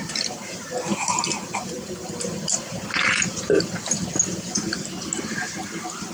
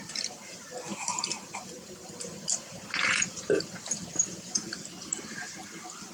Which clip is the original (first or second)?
first